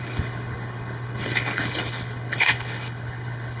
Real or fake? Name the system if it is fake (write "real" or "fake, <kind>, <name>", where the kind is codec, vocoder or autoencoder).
fake, codec, HILCodec